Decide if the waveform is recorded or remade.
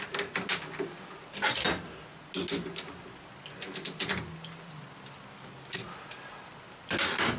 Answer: recorded